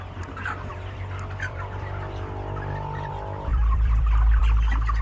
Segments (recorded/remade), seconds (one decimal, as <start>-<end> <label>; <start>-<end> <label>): 0.0-0.7 recorded; 0.7-3.1 remade; 3.1-3.5 recorded; 3.5-4.4 remade; 4.4-5.0 recorded